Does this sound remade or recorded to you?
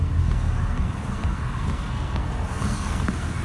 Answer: remade